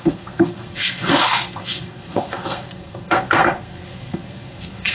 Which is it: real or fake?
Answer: fake